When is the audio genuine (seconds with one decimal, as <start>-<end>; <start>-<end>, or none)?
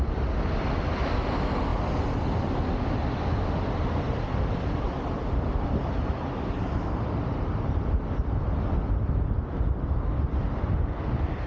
0.0-11.5